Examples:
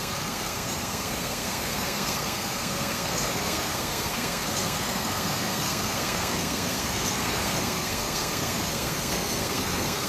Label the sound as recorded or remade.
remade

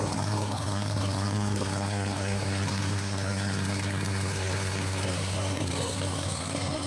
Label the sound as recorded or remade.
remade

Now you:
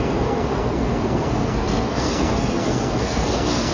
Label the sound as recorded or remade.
remade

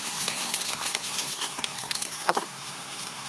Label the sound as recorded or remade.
remade